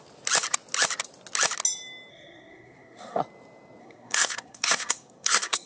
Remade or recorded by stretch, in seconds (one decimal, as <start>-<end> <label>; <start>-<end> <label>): 0.0-2.1 recorded; 2.1-3.2 remade; 3.2-3.8 recorded; 3.8-5.7 remade